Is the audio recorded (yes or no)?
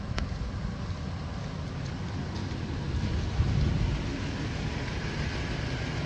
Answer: yes